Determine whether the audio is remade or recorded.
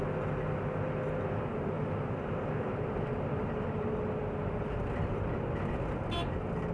recorded